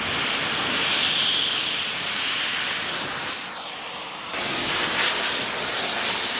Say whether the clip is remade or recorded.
recorded